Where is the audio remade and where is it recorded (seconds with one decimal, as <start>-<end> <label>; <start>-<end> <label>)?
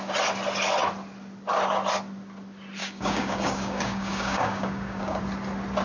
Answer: 0.0-2.8 recorded; 2.8-5.2 remade; 5.2-5.8 recorded